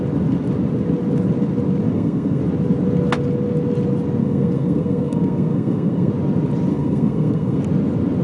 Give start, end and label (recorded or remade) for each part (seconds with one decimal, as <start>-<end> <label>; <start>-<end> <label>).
0.0-1.9 recorded; 1.9-2.4 remade; 2.4-4.2 recorded; 4.2-6.1 remade; 6.1-6.7 recorded; 6.7-7.6 remade; 7.6-8.2 recorded